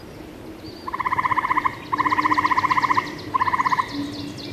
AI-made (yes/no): no